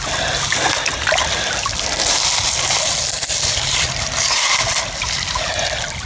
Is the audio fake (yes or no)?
no